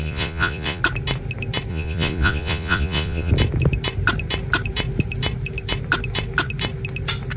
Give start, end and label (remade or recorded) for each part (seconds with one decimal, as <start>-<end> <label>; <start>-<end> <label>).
0.0-0.8 remade; 0.8-1.7 recorded; 1.7-3.3 remade; 3.3-7.4 recorded